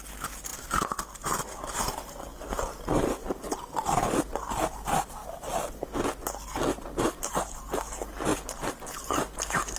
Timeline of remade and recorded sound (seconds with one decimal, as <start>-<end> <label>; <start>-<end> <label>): 0.0-9.8 recorded